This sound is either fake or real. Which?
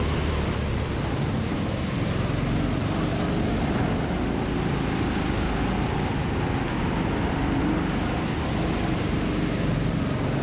real